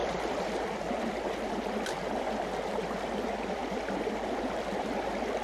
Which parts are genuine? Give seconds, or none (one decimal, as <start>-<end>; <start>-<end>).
none